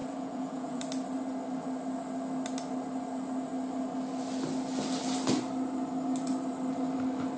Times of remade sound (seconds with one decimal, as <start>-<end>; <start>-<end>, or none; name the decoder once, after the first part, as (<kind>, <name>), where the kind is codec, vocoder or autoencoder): 0.0-0.8 (vocoder, Vocos)